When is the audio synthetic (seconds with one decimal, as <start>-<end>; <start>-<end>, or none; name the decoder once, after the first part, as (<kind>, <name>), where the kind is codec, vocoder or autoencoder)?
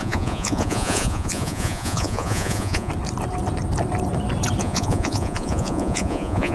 0.0-2.9 (vocoder, Vocos); 4.6-6.5